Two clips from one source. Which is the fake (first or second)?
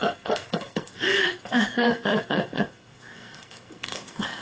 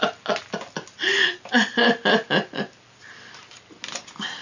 first